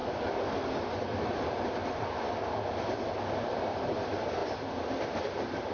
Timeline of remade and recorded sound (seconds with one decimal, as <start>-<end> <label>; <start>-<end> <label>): 0.0-5.7 recorded

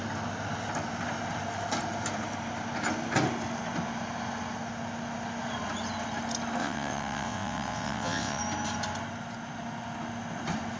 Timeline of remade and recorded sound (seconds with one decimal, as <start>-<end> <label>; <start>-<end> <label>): 0.0-6.6 recorded; 6.6-8.4 remade; 8.4-10.8 recorded

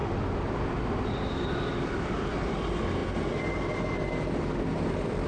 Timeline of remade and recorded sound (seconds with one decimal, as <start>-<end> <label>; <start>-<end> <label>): 0.0-5.3 recorded

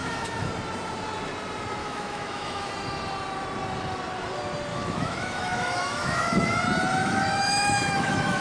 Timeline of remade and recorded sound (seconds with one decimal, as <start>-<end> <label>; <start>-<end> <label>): 0.0-0.5 remade; 0.5-1.8 recorded; 1.8-2.7 remade; 2.7-4.7 recorded; 4.7-6.6 remade; 6.6-7.0 recorded; 7.0-8.4 remade